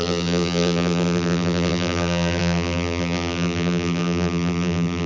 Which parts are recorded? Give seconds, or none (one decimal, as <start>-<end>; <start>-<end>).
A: none